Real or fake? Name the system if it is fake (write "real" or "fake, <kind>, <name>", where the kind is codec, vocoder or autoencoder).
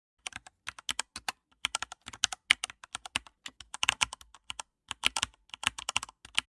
real